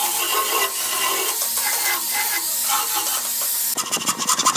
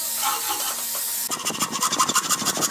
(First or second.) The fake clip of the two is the second